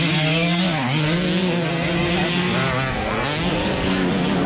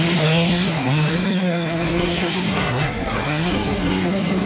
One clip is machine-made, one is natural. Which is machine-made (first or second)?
second